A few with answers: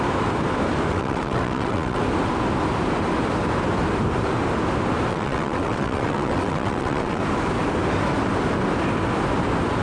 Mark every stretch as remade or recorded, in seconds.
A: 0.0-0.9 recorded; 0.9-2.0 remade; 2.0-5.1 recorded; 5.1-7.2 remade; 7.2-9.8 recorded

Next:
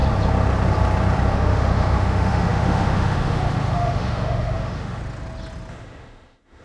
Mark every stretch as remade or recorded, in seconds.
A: 0.0-1.3 recorded; 1.3-5.0 remade; 5.0-5.7 recorded; 5.7-6.6 remade

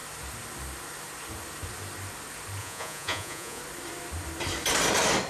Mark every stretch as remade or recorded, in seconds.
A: 0.0-2.6 recorded; 2.6-3.6 remade; 3.6-5.3 recorded

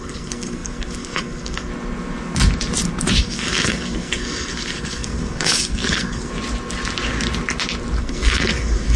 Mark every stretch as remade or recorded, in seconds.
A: 0.0-1.7 remade; 1.7-3.2 recorded; 3.2-6.3 remade; 6.3-8.0 recorded; 8.0-9.0 remade

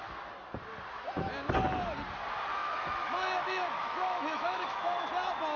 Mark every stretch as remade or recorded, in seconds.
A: 0.0-2.6 recorded; 2.6-5.1 remade; 5.1-5.6 recorded

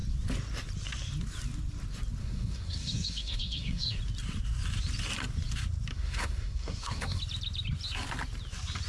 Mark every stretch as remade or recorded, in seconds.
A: 0.0-2.2 recorded; 2.2-4.0 remade; 4.0-5.9 recorded; 5.9-7.2 remade; 7.2-8.9 recorded

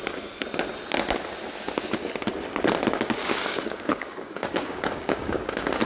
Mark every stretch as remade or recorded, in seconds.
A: 0.0-3.2 recorded; 3.2-5.8 remade

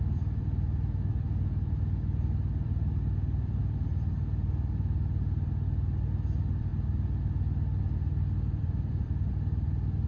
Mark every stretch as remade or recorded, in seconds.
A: 0.0-6.7 remade; 6.7-7.8 recorded; 7.8-10.1 remade